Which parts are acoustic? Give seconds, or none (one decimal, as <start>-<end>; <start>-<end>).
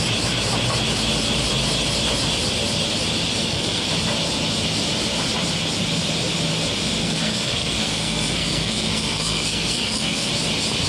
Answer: 0.0-3.4; 3.9-7.0; 10.3-10.9